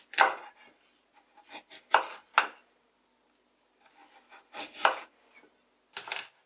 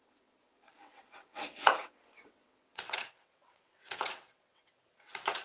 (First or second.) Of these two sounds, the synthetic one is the second